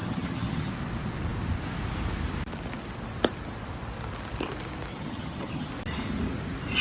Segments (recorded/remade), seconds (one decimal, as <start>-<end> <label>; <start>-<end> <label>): 0.0-0.7 remade; 0.7-4.9 recorded; 4.9-5.7 remade; 5.7-6.8 recorded